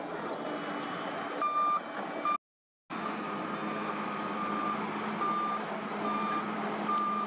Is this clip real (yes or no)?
yes